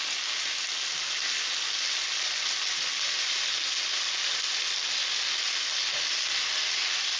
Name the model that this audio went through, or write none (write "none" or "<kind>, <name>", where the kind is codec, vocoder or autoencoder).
none